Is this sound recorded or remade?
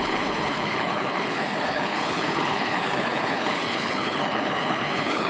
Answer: remade